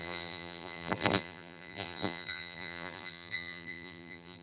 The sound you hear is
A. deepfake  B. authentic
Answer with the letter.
A